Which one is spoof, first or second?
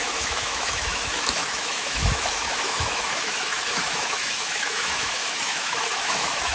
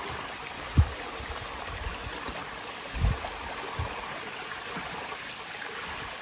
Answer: first